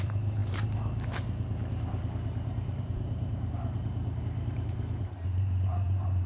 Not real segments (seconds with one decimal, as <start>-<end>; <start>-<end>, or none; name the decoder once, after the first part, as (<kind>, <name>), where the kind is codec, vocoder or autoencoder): 0.0-6.3 (vocoder, BigVGAN v2)